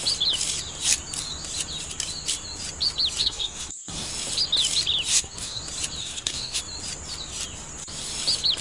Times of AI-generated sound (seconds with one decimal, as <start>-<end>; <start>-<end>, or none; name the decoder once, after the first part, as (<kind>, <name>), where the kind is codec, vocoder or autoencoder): 3.2-4.1 (codec, SNAC); 5.1-5.6; 6.0-6.6